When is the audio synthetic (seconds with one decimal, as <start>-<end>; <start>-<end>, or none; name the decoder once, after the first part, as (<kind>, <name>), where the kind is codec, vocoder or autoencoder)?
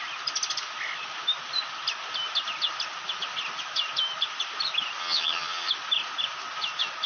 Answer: 5.0-5.7 (vocoder, HiFi-GAN)